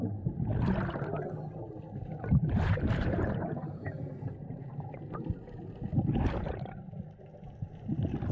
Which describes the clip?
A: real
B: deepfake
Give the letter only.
A